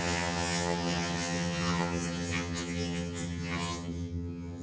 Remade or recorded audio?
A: remade